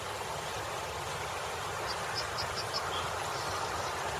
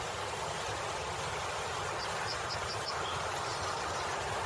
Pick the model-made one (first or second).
second